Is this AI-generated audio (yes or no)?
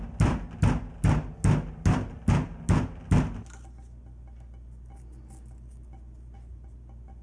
no